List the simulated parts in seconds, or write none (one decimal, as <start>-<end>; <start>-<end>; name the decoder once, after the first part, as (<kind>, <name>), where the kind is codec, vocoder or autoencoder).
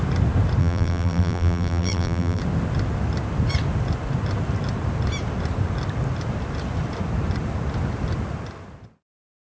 0.6-2.4 (vocoder, BigVGAN v2)